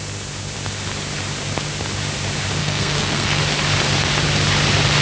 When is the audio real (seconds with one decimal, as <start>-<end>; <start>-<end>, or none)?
0.0-2.6; 3.4-5.0